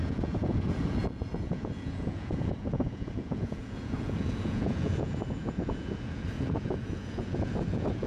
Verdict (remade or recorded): remade